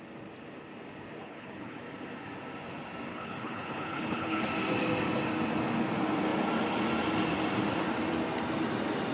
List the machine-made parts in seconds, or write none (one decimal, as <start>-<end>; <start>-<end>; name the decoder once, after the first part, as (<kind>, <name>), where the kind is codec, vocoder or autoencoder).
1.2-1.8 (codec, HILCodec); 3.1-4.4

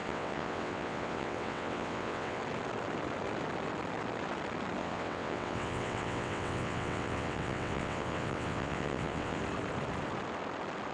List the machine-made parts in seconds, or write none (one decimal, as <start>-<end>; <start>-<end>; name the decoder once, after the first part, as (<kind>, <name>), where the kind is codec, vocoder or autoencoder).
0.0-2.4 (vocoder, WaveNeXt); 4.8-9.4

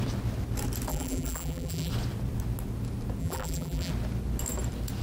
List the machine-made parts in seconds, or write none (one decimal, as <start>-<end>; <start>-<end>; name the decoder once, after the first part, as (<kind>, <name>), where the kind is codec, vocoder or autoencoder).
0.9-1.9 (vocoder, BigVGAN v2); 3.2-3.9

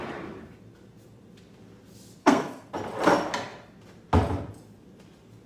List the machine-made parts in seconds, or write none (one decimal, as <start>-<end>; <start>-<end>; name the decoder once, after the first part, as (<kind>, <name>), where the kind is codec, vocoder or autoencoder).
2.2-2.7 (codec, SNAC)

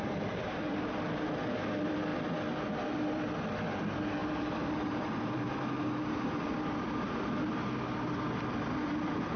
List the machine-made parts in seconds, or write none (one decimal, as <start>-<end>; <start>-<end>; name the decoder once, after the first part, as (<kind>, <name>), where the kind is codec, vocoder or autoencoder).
0.0-2.1 (vocoder, BigVGAN v2); 2.9-9.4

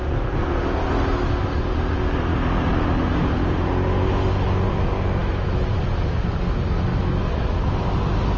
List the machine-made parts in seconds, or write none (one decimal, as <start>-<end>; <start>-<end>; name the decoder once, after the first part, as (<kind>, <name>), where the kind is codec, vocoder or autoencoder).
5.2-5.8 (autoencoder, DAC-VAE); 6.9-7.8

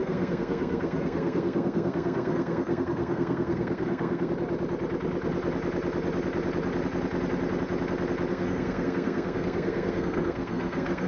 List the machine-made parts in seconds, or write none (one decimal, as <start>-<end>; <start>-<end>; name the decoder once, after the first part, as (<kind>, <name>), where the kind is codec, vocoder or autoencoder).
0.0-4.3 (codec, SNAC); 8.3-11.1

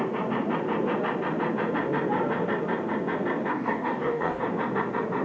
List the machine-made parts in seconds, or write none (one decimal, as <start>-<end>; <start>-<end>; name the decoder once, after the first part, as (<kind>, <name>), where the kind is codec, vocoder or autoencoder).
3.5-4.4 (codec, DAC)